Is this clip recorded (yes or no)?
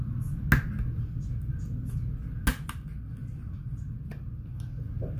yes